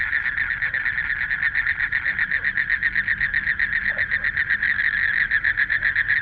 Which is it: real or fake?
real